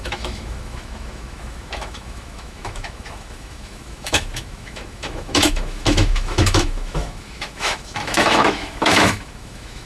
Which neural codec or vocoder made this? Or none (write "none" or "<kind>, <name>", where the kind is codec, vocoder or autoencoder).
autoencoder, DAC-VAE